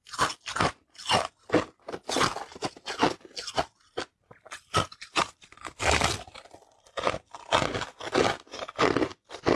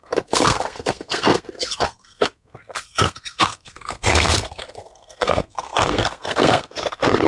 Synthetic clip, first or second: second